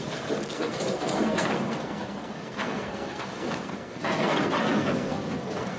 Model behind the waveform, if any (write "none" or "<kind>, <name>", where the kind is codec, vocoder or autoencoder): codec, SNAC